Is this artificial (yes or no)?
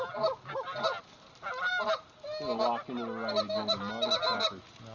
no